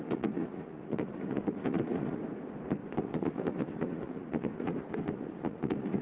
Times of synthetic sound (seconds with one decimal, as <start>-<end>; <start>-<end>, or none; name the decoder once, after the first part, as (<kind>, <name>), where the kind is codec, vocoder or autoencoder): 0.0-2.2 (vocoder, Vocos); 3.0-6.0